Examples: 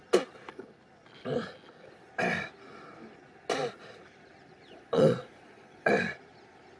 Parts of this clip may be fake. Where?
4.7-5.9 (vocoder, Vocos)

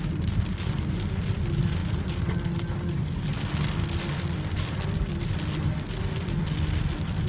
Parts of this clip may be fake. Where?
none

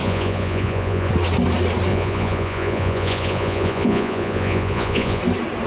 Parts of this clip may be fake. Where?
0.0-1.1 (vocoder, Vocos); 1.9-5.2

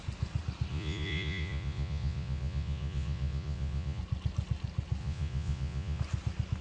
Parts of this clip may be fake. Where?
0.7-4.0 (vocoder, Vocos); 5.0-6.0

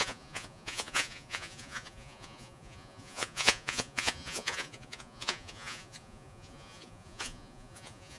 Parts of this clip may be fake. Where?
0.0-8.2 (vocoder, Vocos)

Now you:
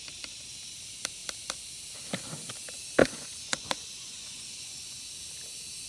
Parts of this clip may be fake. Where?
3.0-5.1 (vocoder, Vocos)

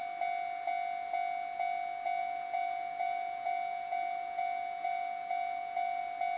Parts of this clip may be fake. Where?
2.2-6.0 (vocoder, Vocos)

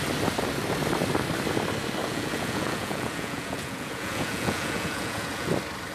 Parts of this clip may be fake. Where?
2.0-5.5 (vocoder, Vocos)